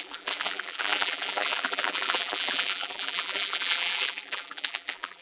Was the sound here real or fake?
fake